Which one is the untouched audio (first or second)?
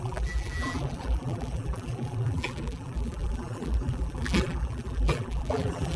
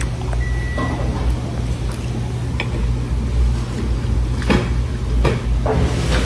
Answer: second